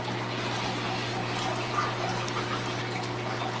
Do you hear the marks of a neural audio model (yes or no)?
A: no